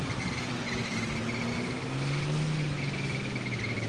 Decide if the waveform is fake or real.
real